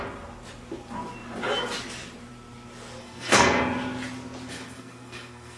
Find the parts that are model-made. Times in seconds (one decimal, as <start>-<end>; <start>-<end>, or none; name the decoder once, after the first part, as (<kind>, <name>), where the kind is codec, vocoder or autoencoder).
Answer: 3.0-3.6 (codec, SNAC); 4.5-5.6